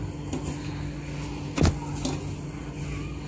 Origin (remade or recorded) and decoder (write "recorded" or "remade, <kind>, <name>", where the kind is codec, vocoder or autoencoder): recorded